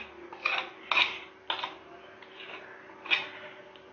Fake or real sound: real